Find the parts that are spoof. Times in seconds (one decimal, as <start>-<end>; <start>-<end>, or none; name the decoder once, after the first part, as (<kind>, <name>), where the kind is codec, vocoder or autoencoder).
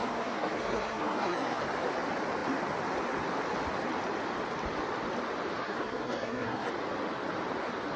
0.0-1.6 (codec, SNAC); 5.6-6.7